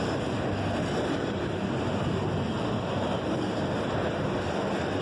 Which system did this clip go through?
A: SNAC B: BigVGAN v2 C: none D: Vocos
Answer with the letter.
C